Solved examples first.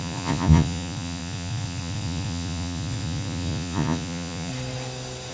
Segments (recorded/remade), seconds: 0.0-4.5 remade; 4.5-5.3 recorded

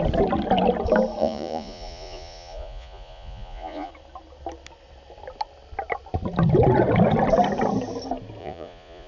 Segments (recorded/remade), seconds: 0.0-1.2 recorded; 1.2-3.9 remade; 3.9-8.4 recorded; 8.4-9.1 remade